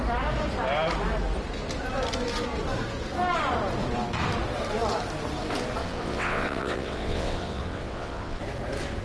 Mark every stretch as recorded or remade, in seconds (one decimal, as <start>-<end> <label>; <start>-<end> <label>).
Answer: 0.0-5.8 recorded; 5.8-8.4 remade; 8.4-9.0 recorded

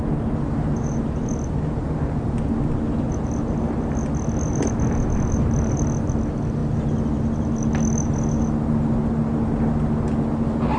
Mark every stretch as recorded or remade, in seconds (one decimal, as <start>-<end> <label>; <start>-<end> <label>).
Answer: 0.0-10.8 recorded